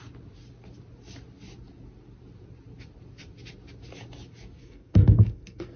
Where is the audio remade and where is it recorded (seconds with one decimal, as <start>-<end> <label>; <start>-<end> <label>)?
0.0-4.6 recorded; 4.6-5.8 remade